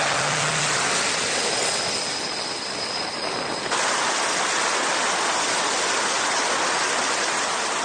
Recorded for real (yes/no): yes